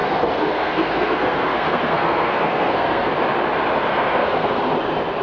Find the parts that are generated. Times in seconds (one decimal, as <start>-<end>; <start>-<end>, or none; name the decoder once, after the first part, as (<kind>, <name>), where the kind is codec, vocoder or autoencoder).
0.0-3.1 (codec, SNAC); 3.9-4.6